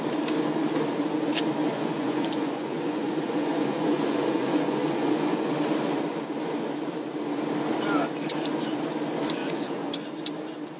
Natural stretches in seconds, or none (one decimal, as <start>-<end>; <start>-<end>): 0.0-1.7; 5.5-9.4; 9.9-10.8